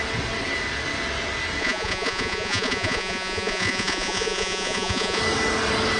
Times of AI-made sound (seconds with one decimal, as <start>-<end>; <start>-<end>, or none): 1.6-5.2